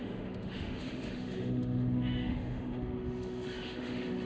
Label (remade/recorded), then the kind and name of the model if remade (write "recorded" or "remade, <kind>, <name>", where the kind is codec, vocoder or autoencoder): remade, autoencoder, DAC-VAE